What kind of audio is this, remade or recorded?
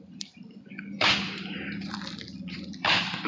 remade